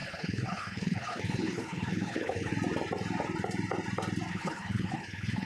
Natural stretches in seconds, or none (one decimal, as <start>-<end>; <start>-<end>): 2.5-4.3

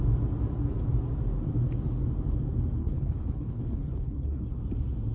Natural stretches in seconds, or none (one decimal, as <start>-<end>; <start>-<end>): 0.0-2.8; 4.6-5.1

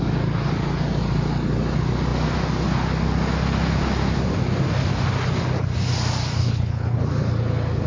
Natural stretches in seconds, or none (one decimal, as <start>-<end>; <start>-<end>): 0.0-6.4; 7.0-7.9